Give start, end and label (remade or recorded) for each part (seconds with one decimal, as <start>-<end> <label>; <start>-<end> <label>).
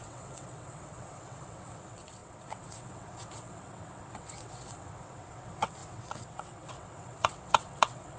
0.0-8.2 remade